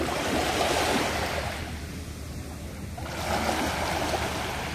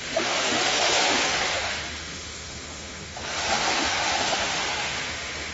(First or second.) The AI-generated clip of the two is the second